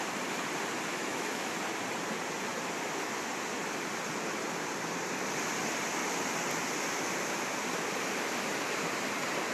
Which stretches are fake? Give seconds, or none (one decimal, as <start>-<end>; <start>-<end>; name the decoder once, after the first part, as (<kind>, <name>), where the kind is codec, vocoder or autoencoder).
0.9-1.5 (autoencoder, DAC-VAE)